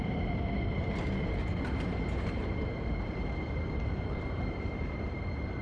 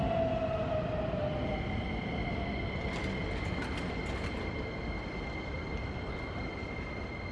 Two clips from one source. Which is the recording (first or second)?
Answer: second